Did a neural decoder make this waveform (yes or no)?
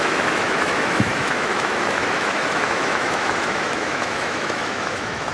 yes